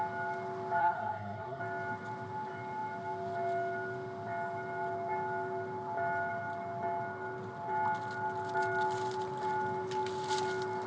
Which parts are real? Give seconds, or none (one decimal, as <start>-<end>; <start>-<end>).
0.0-0.8; 1.6-10.9